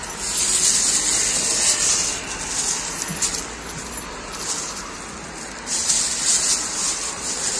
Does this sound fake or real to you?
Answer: real